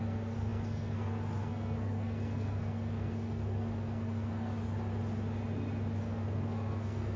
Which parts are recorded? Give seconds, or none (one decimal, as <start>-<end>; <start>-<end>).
4.5-6.0